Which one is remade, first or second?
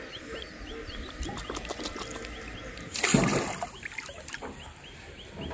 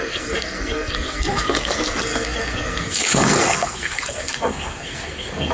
second